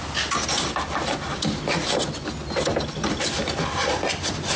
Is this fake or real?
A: real